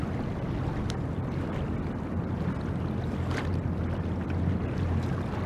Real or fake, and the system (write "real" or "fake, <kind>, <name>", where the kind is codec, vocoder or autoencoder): real